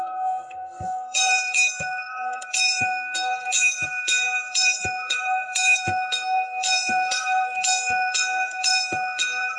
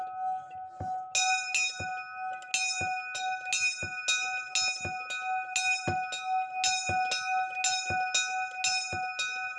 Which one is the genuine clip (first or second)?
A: second